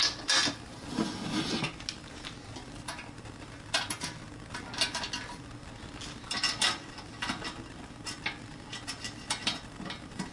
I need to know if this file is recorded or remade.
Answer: recorded